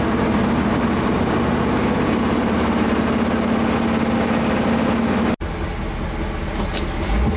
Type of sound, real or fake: real